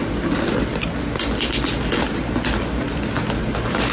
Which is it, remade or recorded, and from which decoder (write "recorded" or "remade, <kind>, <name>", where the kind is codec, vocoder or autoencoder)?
recorded